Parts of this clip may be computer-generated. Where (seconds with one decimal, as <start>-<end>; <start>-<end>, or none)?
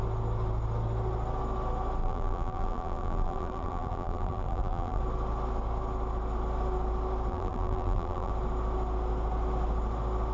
2.0-5.0; 7.3-8.3